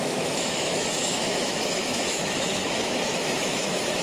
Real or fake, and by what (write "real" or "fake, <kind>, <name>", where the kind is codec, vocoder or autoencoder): fake, autoencoder, DAC-VAE